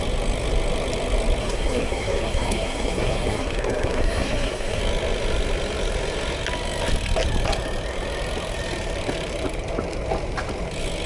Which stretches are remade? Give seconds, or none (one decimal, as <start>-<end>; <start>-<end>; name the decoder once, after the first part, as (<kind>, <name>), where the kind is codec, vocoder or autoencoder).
1.4-4.8 (codec, SNAC)